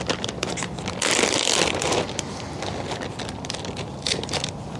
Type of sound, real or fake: real